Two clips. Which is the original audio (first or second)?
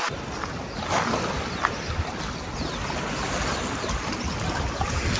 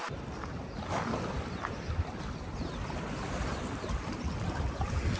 first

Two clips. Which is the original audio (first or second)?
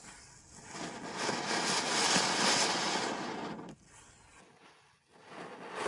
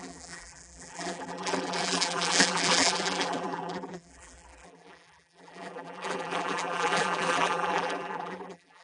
first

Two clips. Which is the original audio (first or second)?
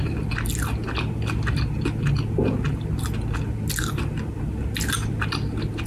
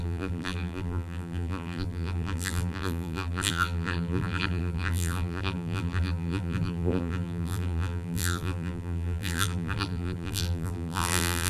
first